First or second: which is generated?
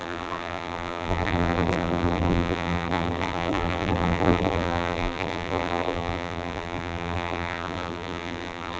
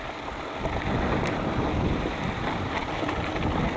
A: first